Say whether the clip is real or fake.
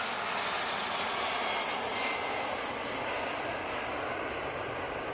real